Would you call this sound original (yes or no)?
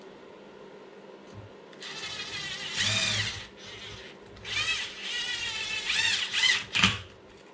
yes